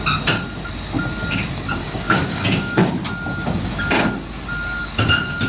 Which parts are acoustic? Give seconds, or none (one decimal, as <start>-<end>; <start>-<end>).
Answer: 0.0-1.8; 2.9-5.5